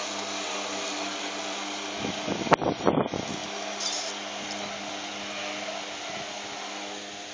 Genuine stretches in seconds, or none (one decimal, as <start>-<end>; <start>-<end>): 0.0-7.3